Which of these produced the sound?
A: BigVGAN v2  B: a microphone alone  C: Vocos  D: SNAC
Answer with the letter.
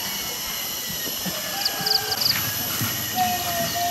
B